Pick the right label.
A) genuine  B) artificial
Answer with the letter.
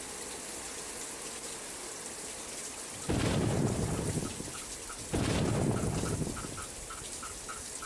A